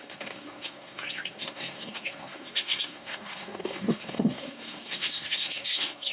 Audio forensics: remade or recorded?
remade